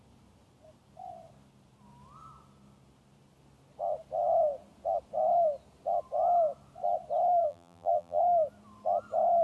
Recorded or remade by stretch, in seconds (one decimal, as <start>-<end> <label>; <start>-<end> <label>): 0.0-7.4 recorded; 7.4-8.2 remade; 8.2-9.4 recorded